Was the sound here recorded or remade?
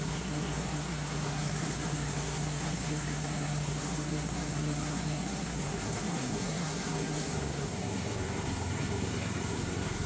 remade